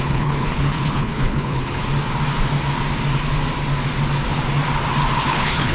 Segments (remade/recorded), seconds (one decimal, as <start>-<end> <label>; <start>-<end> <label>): 0.0-1.8 remade; 1.8-5.2 recorded; 5.2-5.7 remade